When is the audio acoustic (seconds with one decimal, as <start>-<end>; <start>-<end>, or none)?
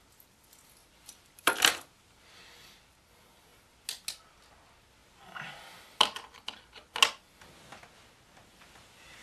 0.0-0.8; 1.5-9.2